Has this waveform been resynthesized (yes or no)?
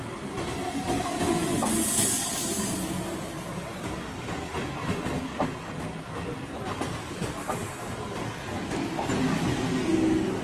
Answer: no